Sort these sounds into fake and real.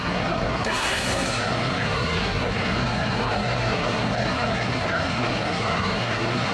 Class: fake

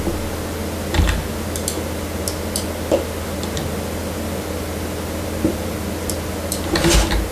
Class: real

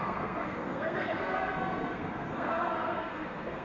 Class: fake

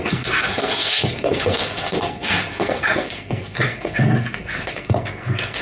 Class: fake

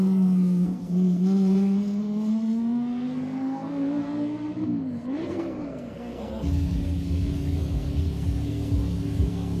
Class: fake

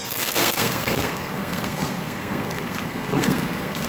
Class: fake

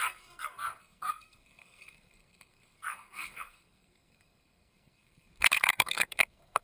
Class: fake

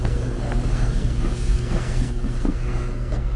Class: fake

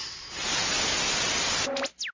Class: real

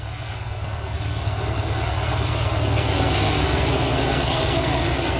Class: fake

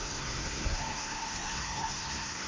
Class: fake